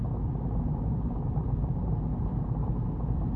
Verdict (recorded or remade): recorded